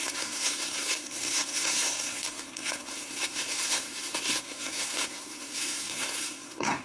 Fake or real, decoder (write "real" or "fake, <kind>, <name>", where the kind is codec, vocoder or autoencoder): fake, codec, SNAC